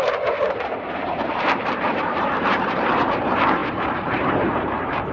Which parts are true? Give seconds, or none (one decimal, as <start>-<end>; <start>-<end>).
none